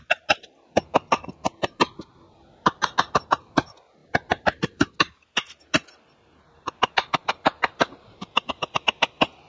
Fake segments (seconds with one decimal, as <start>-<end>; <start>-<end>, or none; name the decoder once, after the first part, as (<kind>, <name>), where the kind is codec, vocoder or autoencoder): none